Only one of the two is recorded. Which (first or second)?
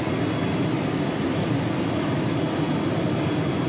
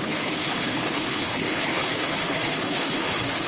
first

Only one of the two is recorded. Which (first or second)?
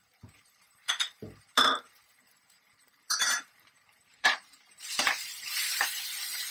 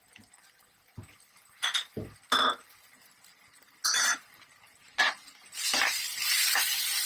second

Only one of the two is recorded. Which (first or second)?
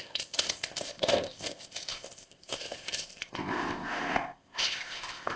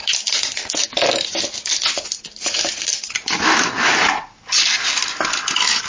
second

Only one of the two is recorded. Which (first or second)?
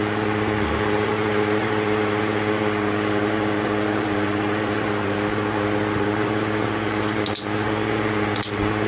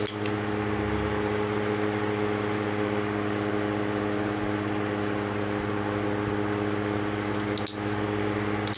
second